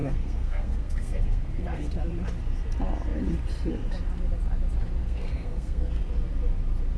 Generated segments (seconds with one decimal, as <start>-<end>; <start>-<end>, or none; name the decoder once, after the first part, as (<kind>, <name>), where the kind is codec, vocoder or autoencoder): 0.0-1.9 (codec, SNAC); 5.0-6.0